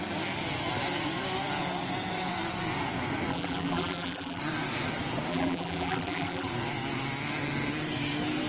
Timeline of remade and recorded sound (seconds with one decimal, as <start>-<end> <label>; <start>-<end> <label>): 0.0-3.3 recorded; 3.3-4.4 remade; 4.4-5.3 recorded; 5.3-6.5 remade; 6.5-8.5 recorded

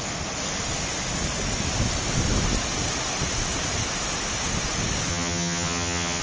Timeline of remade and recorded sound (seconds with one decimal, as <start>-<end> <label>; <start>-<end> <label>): 0.0-5.1 recorded; 5.1-6.2 remade

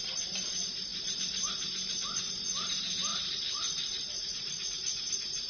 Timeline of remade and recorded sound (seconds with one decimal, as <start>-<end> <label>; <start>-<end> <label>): 0.0-3.1 recorded; 3.1-5.1 remade; 5.1-5.5 recorded

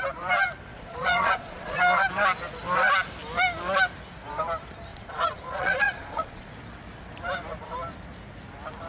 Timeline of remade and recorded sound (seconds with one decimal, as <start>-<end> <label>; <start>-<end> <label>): 0.0-0.7 recorded; 0.7-1.8 remade; 1.8-4.9 recorded; 4.9-6.5 remade; 6.5-8.9 recorded

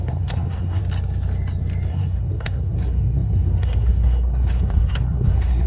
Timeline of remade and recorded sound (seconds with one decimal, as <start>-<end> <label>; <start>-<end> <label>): 0.0-0.8 remade; 0.8-1.9 recorded; 1.9-5.7 remade